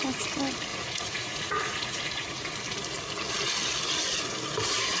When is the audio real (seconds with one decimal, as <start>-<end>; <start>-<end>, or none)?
0.0-0.7; 2.5-5.0